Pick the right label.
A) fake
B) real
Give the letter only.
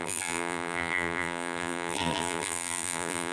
A